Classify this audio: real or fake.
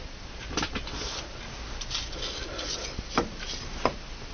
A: real